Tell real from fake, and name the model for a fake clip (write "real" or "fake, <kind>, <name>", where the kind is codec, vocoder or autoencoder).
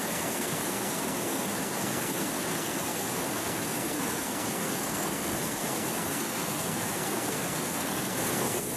fake, codec, SNAC